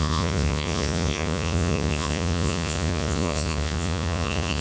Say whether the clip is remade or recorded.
remade